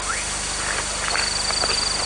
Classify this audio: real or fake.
real